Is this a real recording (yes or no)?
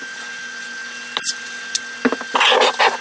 yes